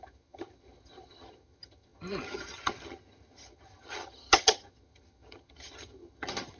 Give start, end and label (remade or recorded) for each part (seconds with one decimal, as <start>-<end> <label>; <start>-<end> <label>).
0.0-6.6 remade